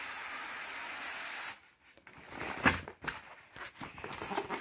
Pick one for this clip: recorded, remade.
recorded